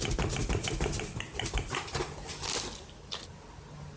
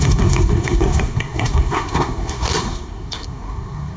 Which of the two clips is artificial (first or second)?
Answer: second